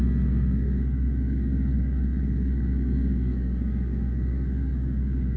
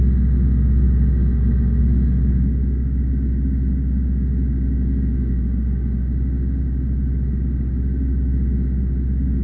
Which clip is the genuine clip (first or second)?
second